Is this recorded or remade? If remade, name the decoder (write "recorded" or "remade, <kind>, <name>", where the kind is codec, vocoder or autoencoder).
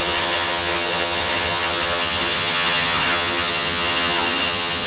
remade, vocoder, HiFi-GAN